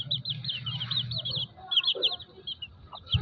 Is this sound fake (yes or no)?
no